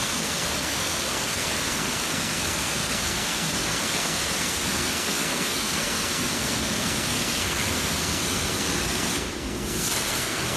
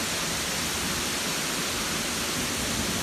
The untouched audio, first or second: second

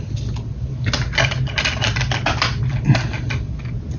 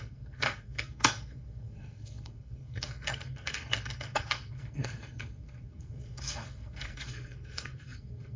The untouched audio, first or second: first